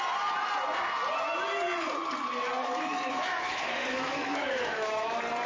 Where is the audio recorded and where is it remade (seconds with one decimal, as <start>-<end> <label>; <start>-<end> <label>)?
0.0-2.6 recorded; 2.6-5.1 remade; 5.1-5.5 recorded